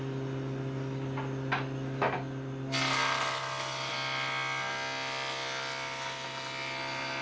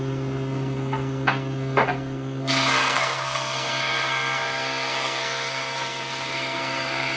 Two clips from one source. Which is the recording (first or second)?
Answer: first